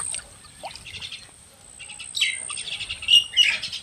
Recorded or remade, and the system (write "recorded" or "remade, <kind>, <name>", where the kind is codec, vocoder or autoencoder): recorded